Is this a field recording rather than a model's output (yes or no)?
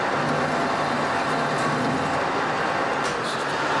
yes